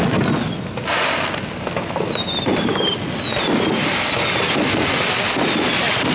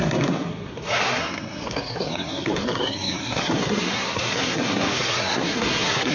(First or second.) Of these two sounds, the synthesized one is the second